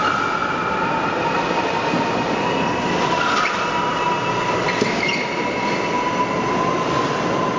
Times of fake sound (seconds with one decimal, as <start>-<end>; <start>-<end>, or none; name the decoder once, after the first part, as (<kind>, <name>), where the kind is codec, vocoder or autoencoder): none